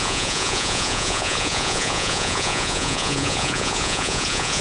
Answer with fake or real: fake